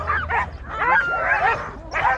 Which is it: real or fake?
real